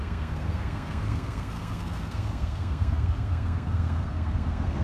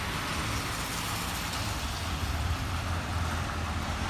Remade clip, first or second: first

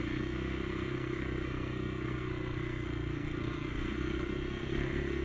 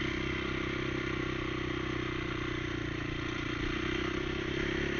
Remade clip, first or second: first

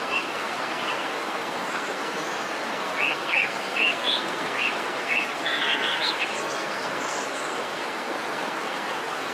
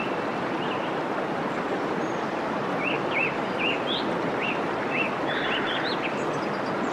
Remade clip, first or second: first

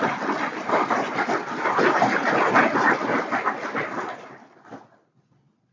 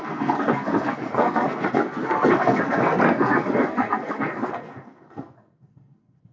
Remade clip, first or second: second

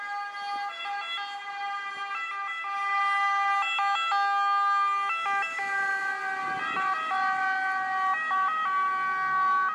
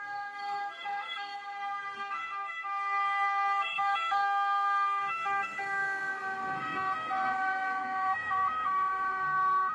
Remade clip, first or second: second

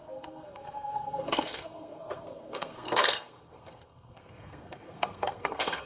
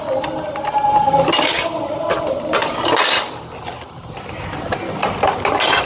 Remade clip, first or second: first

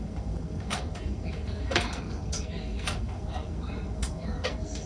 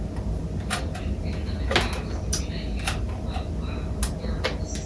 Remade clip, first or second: first